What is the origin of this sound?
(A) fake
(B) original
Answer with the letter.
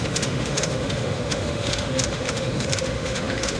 A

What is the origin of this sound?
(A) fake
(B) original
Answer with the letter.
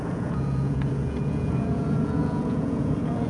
A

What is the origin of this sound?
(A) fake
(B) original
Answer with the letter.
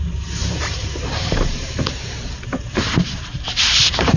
A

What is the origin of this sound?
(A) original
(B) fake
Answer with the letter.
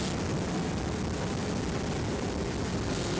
A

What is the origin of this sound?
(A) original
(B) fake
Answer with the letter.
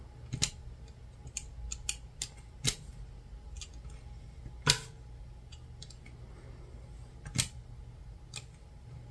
A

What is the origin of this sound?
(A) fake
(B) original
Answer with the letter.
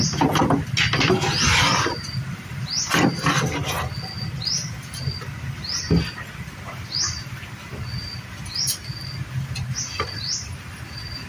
B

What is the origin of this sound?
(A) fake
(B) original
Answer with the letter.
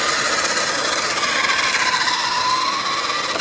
B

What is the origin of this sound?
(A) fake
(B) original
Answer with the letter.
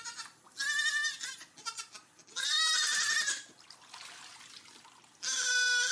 B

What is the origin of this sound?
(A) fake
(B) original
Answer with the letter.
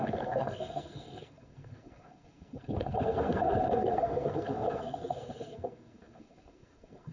A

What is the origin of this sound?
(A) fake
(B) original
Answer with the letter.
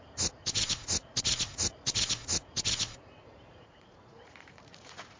A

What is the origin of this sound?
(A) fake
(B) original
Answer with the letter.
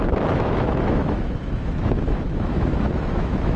A